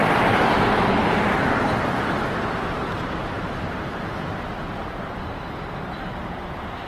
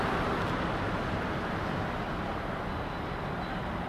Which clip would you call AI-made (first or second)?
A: first